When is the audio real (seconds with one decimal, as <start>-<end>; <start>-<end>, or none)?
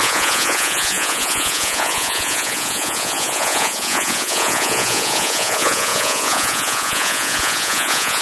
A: none